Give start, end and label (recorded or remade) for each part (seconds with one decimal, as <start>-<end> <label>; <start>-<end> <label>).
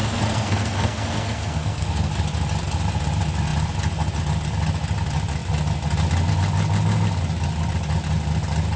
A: 0.0-2.1 remade; 2.1-8.8 recorded